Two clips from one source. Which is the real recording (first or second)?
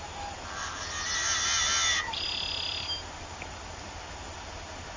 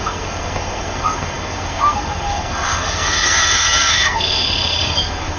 first